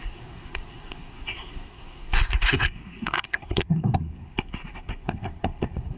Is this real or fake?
fake